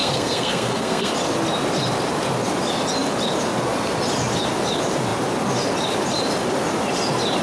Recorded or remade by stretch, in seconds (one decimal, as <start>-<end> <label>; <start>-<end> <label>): 0.0-1.1 remade; 1.1-7.4 recorded